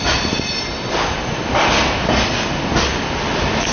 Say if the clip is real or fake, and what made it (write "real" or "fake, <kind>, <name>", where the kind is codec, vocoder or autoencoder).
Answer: real